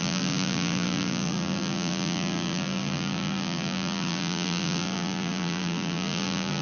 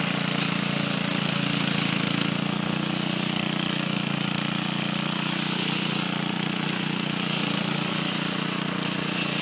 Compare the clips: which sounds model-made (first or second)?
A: first